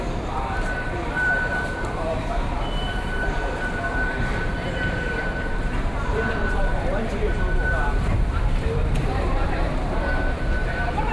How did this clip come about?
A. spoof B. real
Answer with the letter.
A